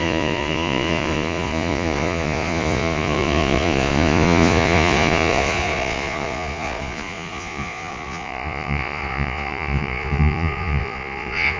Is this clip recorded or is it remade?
remade